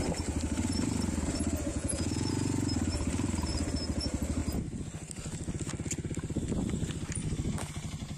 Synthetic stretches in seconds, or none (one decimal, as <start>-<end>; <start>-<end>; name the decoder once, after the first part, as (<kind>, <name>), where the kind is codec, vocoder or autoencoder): 1.7-2.3 (vocoder, Vocos)